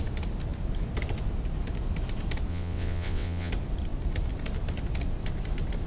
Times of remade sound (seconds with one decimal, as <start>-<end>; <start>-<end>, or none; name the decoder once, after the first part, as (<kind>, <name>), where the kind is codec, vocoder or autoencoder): 2.5-3.5 (vocoder, WaveNeXt)